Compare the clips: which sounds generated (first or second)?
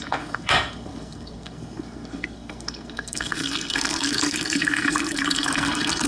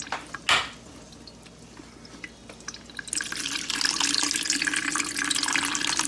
first